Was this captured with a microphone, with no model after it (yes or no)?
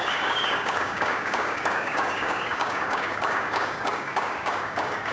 no